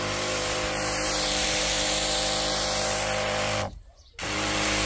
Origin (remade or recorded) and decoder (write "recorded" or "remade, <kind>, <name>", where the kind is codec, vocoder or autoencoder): remade, vocoder, BigVGAN v2